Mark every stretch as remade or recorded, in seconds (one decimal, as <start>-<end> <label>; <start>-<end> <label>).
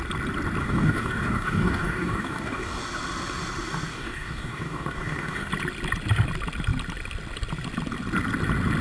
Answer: 0.0-0.6 recorded; 0.6-2.8 remade; 2.8-3.9 recorded; 3.9-5.5 remade; 5.5-8.8 recorded